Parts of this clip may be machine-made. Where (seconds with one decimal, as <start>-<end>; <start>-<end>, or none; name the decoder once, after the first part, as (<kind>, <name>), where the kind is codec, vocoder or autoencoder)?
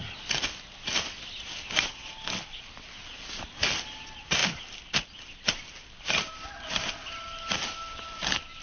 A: none